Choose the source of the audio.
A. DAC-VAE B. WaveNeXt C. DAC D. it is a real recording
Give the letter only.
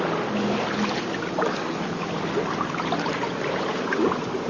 D